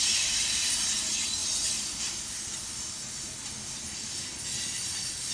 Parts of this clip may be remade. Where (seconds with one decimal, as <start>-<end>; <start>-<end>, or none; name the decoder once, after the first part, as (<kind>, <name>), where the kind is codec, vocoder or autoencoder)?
none